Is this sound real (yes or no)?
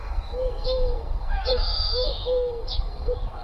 no